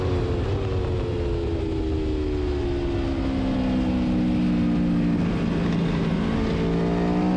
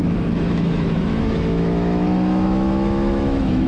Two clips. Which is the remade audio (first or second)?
second